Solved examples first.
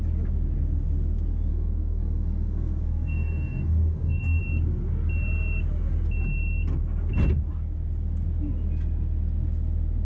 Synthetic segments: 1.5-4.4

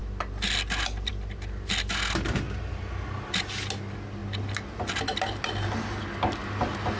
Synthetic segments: none

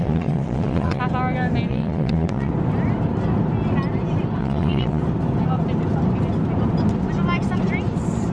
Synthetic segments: 0.0-1.0; 1.7-2.5; 4.4-5.0

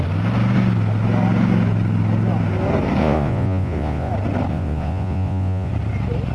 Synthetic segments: 3.0-4.1; 4.5-5.7

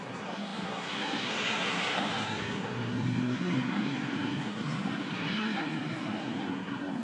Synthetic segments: 0.0-7.0

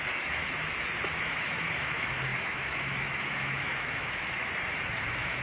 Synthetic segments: 0.0-0.4; 1.2-4.4; 5.0-5.4